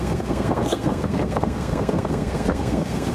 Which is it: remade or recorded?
remade